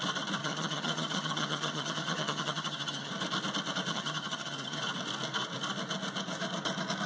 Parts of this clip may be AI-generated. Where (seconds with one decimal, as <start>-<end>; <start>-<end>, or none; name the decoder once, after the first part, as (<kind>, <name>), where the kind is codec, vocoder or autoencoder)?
0.4-3.1 (vocoder, HiFi-GAN); 3.9-4.8